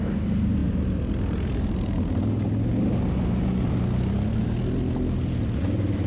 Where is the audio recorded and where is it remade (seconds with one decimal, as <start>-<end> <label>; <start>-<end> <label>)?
0.0-6.1 recorded